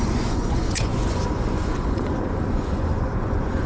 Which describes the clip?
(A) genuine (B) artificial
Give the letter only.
B